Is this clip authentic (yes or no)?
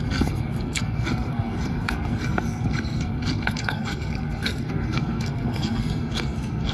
no